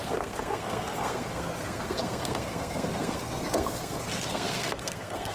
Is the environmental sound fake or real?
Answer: fake